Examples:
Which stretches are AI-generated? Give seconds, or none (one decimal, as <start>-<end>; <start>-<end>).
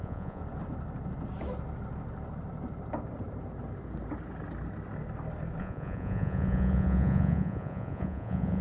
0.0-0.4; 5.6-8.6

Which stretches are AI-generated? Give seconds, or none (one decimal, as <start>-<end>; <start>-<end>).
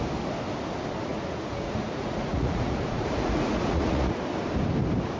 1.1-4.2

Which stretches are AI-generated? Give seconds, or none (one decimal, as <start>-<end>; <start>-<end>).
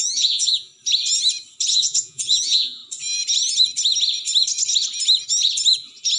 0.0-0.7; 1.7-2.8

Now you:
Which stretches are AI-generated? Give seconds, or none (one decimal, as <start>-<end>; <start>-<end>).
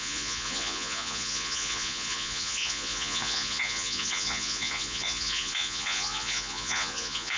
0.0-7.4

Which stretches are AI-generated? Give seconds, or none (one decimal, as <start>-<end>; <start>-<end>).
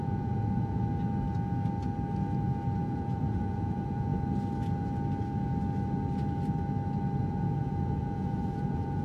0.0-0.8; 2.8-4.1; 7.2-9.0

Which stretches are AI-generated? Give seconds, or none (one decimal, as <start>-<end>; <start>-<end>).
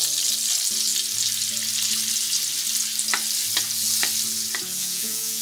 4.8-5.4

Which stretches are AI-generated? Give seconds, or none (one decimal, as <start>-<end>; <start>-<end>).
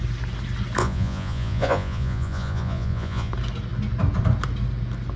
0.8-3.3